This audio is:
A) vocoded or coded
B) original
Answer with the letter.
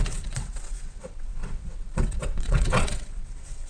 A